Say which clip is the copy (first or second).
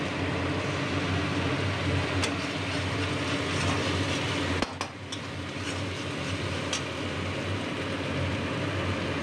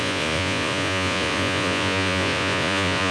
second